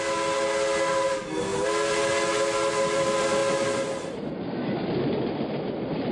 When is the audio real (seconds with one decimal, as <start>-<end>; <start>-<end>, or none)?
0.0-6.1

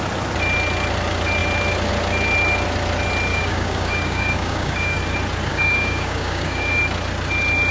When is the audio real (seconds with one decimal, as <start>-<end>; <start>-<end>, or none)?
0.0-3.3; 5.0-5.5; 6.8-7.7

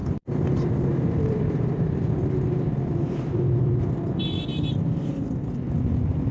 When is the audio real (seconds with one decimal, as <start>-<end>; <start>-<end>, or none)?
3.8-4.5

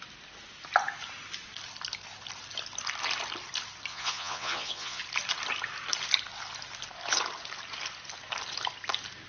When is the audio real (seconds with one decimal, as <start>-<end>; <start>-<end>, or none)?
0.0-3.9; 5.0-9.3

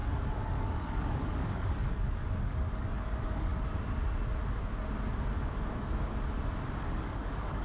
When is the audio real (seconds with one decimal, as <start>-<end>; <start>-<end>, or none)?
3.5-6.8